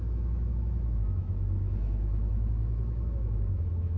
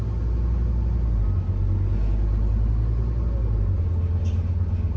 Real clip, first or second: second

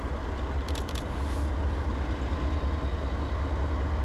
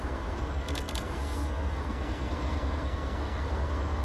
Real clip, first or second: first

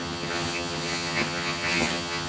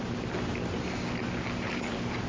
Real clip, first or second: second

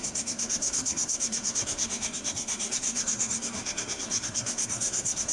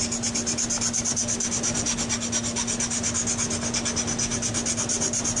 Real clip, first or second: second